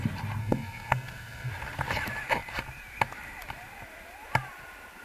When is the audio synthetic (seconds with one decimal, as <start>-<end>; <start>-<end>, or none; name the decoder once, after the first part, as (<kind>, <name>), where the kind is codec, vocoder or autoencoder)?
0.4-1.5 (codec, SNAC)